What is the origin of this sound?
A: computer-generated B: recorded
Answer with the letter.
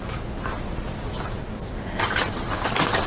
B